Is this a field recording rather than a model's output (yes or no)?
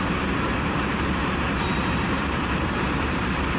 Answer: no